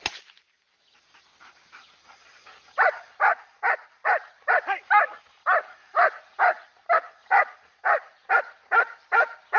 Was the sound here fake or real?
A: real